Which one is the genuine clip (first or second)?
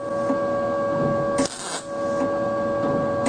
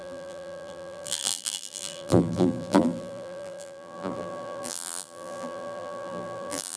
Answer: first